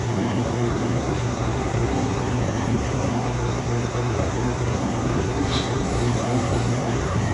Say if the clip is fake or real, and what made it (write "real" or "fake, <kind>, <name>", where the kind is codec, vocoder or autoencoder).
fake, codec, SNAC